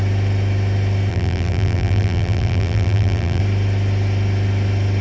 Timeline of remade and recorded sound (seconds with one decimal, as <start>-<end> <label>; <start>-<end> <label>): 0.0-1.1 recorded; 1.1-3.4 remade; 3.4-5.0 recorded